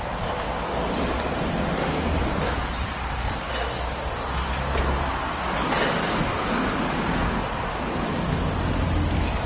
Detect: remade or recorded recorded